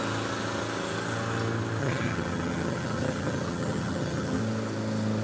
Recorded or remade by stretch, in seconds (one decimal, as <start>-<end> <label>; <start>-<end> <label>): 0.0-1.8 recorded; 1.8-4.4 remade; 4.4-5.2 recorded